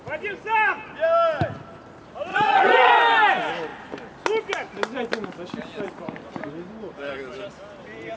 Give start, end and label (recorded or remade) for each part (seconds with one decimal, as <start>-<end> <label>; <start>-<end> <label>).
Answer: 0.0-2.3 recorded; 2.3-2.9 remade; 2.9-8.2 recorded